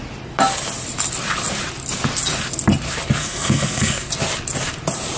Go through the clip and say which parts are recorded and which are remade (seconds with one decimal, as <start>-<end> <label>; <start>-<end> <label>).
0.0-3.2 recorded; 3.2-4.1 remade; 4.1-5.2 recorded